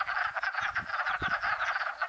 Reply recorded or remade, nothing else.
recorded